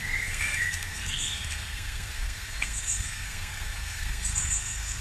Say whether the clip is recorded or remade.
remade